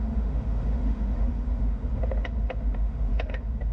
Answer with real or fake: fake